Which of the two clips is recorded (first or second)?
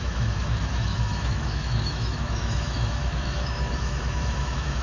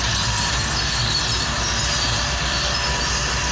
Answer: second